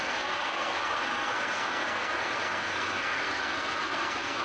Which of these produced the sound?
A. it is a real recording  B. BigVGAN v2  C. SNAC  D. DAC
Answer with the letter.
C